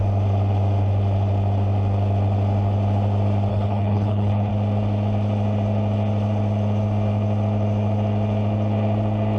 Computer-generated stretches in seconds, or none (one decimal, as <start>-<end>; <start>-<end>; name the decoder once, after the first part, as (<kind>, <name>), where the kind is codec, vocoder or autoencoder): 3.5-4.5 (codec, HILCodec)